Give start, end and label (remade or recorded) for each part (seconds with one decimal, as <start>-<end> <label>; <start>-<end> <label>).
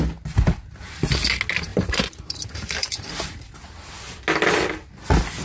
0.0-1.7 recorded; 1.7-3.6 remade; 3.6-5.4 recorded